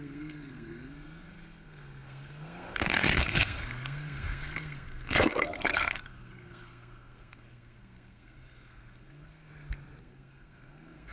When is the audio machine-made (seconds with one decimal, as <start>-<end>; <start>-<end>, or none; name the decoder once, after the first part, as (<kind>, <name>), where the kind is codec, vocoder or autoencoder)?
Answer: 0.0-9.5 (codec, SNAC); 10.0-11.1